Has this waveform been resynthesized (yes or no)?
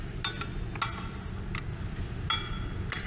no